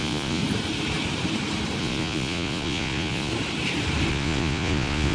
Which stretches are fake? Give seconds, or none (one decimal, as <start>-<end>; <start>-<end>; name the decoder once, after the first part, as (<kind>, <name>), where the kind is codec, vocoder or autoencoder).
0.0-0.4 (vocoder, Vocos); 1.8-3.3; 4.1-5.1